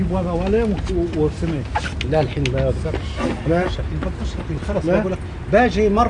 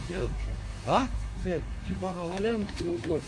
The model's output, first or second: second